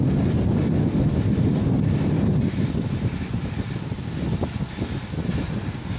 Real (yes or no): yes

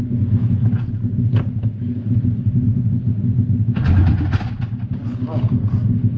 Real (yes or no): yes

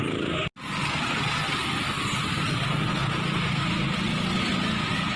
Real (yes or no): yes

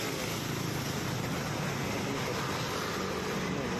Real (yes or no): yes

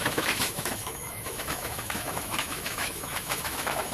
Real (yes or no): no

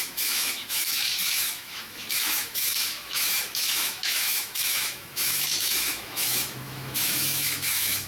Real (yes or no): no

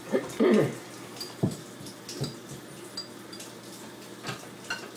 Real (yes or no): yes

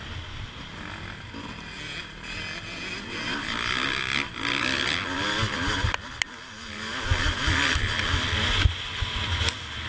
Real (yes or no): yes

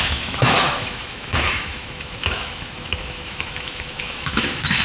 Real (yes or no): no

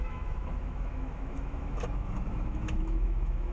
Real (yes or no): no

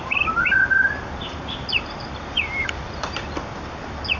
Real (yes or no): yes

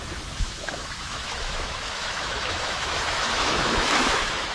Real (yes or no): no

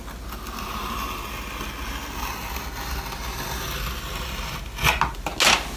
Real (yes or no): yes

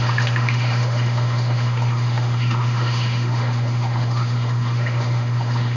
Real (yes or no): no